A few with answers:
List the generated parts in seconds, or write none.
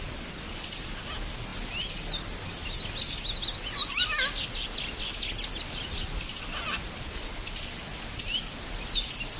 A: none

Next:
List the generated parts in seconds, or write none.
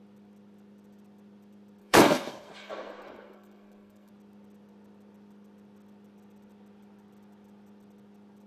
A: 1.8-4.1 (codec, SNAC)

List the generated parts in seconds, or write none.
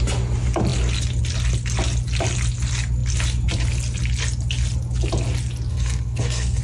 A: 5.7-6.6 (codec, SNAC)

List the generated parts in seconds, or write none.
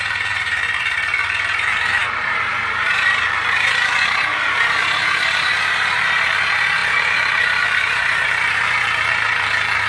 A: 0.0-9.9 (vocoder, BigVGAN v2)